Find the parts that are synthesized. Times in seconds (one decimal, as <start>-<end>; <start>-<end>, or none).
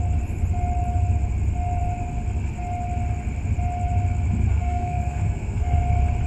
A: 4.5-5.8